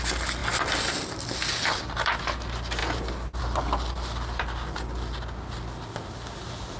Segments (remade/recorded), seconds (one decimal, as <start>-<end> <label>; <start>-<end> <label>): 0.0-6.8 recorded